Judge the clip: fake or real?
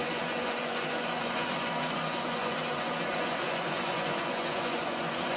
fake